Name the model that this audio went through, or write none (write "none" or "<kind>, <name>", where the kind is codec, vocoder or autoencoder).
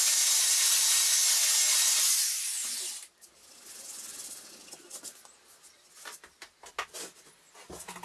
none